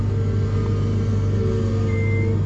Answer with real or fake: real